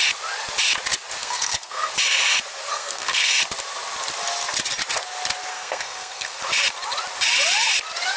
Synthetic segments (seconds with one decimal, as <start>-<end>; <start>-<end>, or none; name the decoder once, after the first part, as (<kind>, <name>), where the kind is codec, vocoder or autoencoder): 1.2-1.9 (codec, SNAC); 2.7-3.3; 5.5-6.4

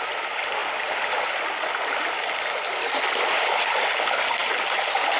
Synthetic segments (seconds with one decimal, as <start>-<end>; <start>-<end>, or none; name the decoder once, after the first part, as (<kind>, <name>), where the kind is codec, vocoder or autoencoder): none

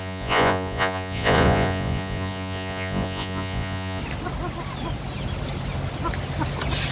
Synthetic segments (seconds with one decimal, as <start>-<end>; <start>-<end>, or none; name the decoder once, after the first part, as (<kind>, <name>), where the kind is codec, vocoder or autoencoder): 0.0-4.0 (vocoder, Vocos)

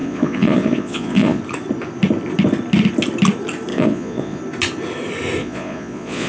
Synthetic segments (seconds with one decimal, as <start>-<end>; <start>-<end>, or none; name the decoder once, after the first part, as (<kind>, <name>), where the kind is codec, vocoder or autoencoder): 0.0-1.4 (vocoder, Vocos); 3.7-4.4; 5.4-6.3

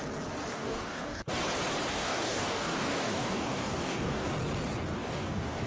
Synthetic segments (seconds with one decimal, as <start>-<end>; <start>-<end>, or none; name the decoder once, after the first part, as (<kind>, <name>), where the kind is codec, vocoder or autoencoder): 0.5-1.2 (codec, DAC); 1.9-4.3; 4.9-5.7

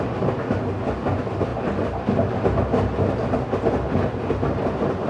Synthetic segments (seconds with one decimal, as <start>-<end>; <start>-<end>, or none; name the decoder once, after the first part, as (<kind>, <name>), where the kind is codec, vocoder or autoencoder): none